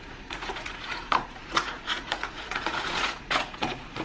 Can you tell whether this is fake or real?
fake